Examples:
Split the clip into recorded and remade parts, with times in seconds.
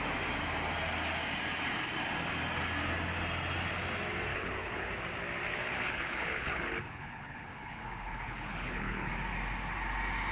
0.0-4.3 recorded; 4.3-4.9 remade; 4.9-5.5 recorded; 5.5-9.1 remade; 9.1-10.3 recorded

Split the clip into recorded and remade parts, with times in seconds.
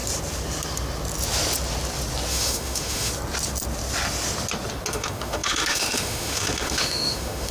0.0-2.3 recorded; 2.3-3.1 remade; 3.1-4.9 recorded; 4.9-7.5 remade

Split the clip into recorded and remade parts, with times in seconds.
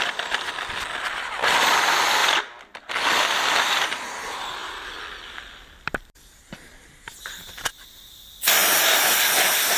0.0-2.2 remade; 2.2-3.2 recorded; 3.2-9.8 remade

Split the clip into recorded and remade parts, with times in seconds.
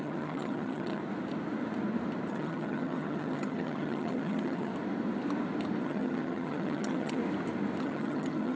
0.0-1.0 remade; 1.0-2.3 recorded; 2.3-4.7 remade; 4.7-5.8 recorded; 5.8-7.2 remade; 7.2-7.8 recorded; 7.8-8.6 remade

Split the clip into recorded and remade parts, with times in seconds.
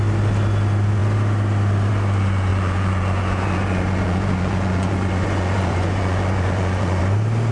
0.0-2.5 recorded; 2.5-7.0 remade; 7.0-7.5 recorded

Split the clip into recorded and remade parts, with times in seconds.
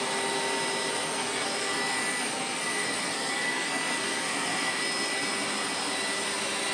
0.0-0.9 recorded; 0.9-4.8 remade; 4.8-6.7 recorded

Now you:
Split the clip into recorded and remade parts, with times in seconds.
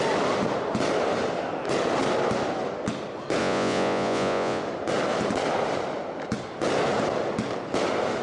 0.0-3.4 recorded; 3.4-4.6 remade; 4.6-8.2 recorded